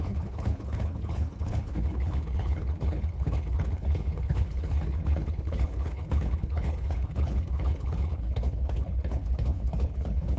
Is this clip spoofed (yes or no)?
yes